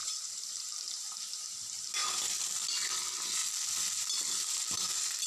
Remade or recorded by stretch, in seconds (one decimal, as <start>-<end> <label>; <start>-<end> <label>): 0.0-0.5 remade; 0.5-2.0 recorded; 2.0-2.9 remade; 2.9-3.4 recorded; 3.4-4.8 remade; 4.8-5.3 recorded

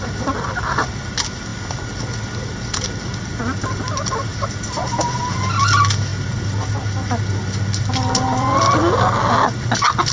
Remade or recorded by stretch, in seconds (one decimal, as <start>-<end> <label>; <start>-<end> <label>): 0.0-10.1 recorded

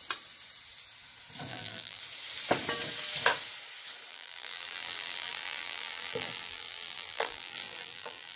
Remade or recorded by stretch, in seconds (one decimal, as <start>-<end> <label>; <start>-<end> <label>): 0.0-1.5 recorded; 1.5-2.0 remade; 2.0-4.1 recorded; 4.1-8.4 remade

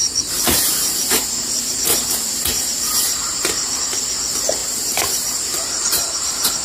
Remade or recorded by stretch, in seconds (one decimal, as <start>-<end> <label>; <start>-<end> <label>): 0.0-3.8 remade; 3.8-4.6 recorded; 4.6-6.6 remade

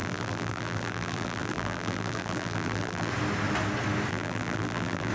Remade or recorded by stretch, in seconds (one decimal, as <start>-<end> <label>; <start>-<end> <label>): 0.0-3.1 remade; 3.1-4.1 recorded; 4.1-5.1 remade

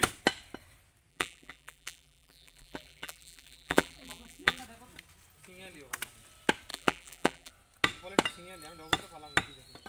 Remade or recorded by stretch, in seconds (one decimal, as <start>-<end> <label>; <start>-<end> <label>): 0.0-1.1 recorded; 1.1-4.6 remade; 4.6-6.7 recorded; 6.7-7.5 remade; 7.5-9.9 recorded

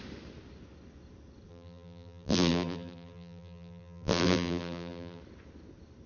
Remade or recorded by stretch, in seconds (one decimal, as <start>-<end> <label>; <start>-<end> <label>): 0.0-1.5 recorded; 1.5-5.2 remade; 5.2-6.1 recorded

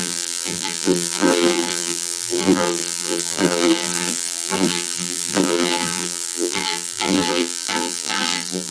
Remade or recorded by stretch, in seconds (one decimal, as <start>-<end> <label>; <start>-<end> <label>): 0.0-8.7 remade